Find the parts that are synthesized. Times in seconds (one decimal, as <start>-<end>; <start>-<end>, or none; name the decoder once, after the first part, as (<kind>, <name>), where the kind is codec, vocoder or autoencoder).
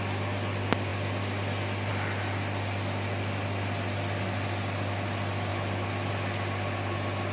none